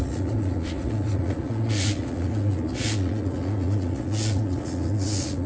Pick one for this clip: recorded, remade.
remade